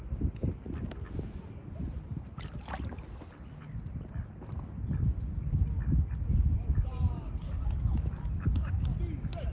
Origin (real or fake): real